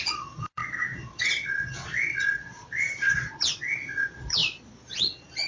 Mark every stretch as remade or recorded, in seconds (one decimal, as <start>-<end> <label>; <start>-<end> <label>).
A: 0.0-5.5 remade